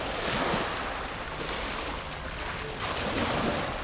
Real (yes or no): yes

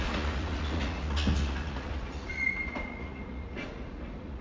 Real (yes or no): no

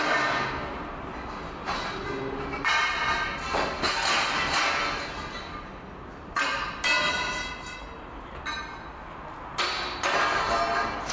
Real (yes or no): yes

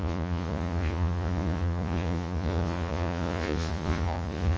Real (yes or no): no